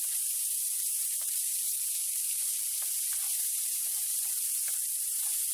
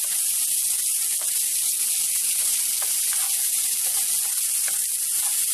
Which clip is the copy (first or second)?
first